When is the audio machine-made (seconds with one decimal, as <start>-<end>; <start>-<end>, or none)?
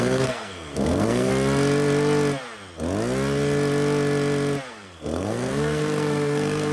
0.0-1.3; 4.7-6.7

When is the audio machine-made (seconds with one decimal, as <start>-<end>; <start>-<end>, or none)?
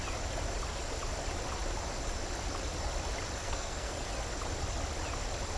3.4-4.1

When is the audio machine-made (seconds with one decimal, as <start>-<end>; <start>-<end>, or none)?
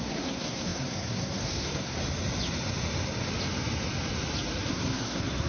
0.0-2.0; 4.7-5.5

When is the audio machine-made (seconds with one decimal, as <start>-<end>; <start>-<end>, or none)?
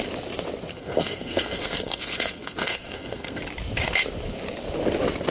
0.7-3.4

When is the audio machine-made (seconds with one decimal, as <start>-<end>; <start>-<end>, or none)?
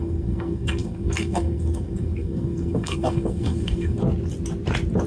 0.0-4.0